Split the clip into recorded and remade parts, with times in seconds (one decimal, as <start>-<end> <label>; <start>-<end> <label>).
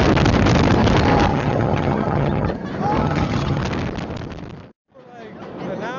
0.0-1.3 recorded; 1.3-2.5 remade; 2.5-3.0 recorded; 3.0-3.6 remade; 3.6-6.0 recorded